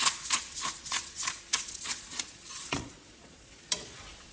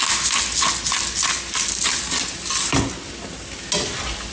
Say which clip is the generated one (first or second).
first